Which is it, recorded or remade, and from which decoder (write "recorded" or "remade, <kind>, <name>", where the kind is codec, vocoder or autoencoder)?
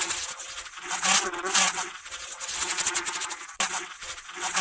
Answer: remade, vocoder, WaveNeXt